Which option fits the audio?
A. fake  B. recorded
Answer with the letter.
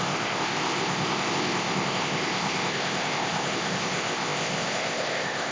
A